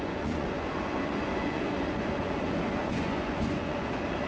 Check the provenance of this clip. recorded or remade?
remade